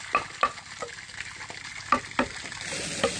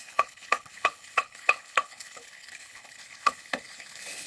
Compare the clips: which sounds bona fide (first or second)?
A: first